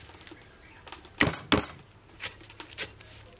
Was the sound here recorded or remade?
recorded